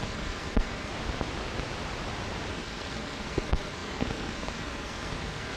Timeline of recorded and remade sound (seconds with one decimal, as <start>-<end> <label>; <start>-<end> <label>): 0.0-0.9 remade; 0.9-2.5 recorded; 2.5-5.6 remade